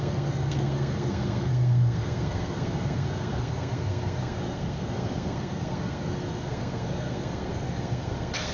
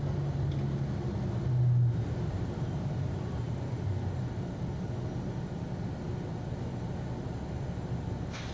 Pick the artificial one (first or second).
first